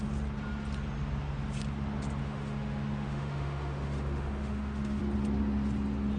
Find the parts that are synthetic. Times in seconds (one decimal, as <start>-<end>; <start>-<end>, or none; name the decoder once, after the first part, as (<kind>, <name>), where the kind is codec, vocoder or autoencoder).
2.2-5.0 (autoencoder, DAC-VAE)